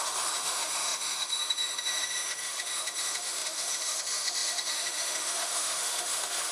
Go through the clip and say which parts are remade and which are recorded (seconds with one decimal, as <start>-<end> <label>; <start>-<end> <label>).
0.0-6.5 remade